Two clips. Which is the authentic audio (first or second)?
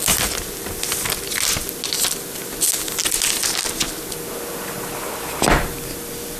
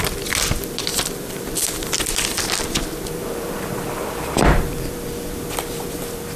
first